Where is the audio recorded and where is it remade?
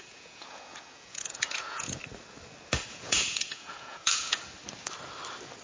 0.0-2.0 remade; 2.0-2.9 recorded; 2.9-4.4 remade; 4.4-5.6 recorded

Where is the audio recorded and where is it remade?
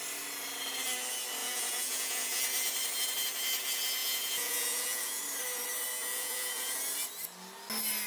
0.0-1.4 recorded; 1.4-2.4 remade; 2.4-4.0 recorded; 4.0-5.2 remade; 5.2-6.1 recorded; 6.1-6.8 remade; 6.8-8.1 recorded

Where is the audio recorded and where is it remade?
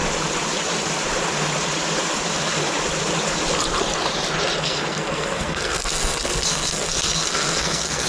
0.0-4.6 recorded; 4.6-8.1 remade